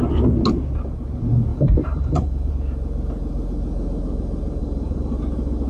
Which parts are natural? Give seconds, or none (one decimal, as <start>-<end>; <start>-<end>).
0.0-1.5; 2.5-4.6; 5.2-5.7